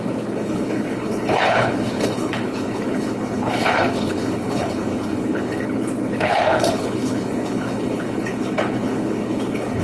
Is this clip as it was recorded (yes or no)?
no